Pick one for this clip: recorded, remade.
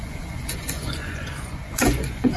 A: remade